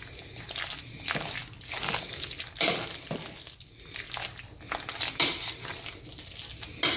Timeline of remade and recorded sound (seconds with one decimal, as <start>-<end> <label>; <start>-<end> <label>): 0.0-7.0 recorded